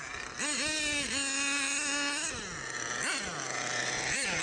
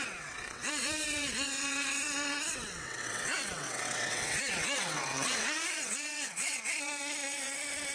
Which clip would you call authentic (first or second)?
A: first